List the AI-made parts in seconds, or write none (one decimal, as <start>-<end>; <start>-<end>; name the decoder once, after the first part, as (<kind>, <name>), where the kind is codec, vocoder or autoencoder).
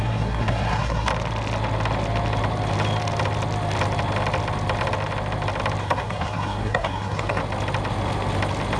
0.0-1.1 (codec, SNAC); 5.8-7.4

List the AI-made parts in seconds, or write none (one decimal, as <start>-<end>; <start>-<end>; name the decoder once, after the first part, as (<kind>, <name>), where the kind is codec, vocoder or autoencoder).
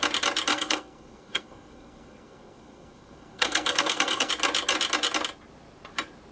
0.5-4.3 (codec, SNAC)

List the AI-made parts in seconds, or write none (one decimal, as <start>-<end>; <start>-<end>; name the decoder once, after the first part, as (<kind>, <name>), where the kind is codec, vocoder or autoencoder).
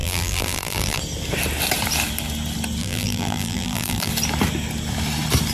0.0-1.0 (vocoder, BigVGAN v2); 2.8-4.1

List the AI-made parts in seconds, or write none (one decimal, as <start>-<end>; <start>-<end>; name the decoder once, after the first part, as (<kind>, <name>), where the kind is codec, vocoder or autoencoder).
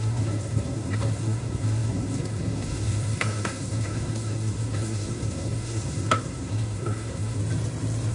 0.0-7.4 (codec, SNAC)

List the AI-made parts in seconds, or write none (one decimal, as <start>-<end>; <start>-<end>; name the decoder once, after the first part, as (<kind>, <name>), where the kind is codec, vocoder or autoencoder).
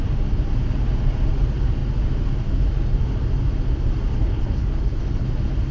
4.1-5.3 (codec, HILCodec)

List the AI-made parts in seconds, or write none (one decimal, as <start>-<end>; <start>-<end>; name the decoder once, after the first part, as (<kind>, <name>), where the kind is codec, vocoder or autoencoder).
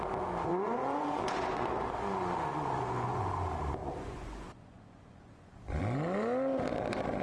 0.5-3.3 (vocoder, Vocos); 3.8-5.8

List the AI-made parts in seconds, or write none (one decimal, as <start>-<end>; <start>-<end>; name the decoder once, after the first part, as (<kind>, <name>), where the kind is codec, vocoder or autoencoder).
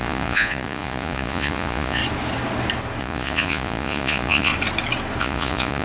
0.0-2.0 (vocoder, Vocos); 3.0-4.5; 5.2-5.8